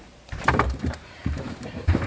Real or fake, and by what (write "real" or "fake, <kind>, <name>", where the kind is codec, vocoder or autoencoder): fake, vocoder, BigVGAN v2